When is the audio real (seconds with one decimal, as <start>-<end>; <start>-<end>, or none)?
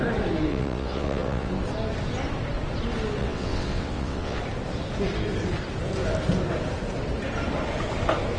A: 0.0-0.5; 1.5-3.2; 4.4-8.4